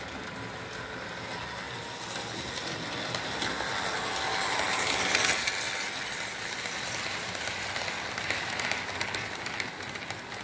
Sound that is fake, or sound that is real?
real